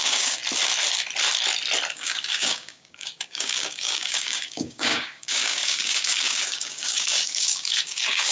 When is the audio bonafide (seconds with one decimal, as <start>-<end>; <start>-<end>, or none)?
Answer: 0.4-1.9